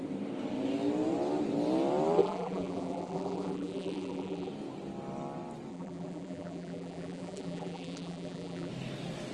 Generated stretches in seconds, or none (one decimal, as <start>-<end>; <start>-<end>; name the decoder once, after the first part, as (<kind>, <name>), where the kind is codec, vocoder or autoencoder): 2.2-4.5 (vocoder, BigVGAN v2); 5.7-8.7